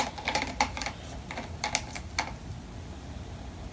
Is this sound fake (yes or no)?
no